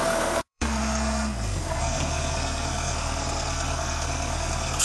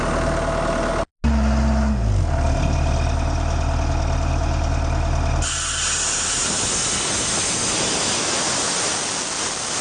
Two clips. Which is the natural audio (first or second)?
second